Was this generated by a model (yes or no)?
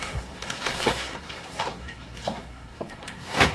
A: yes